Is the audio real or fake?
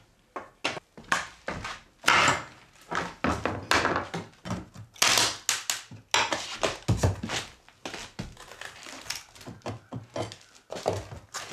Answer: real